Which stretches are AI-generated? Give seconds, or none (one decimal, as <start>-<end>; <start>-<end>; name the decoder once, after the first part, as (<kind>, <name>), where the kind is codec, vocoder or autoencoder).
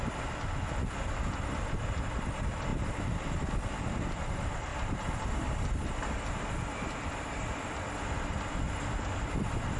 0.0-9.8 (vocoder, BigVGAN v2)